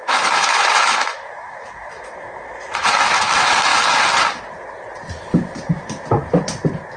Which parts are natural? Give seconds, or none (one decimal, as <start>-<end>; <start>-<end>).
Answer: 3.7-7.0